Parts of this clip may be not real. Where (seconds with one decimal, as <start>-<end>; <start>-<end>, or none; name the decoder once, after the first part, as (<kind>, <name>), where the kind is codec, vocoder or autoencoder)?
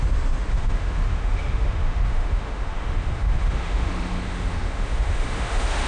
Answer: 0.5-5.9 (autoencoder, DAC-VAE)